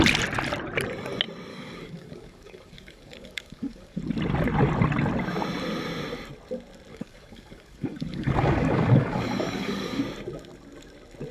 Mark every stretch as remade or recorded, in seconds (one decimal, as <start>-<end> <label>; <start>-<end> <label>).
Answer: 0.0-1.5 recorded; 1.5-4.0 remade; 4.0-6.9 recorded; 6.9-10.0 remade; 10.0-11.3 recorded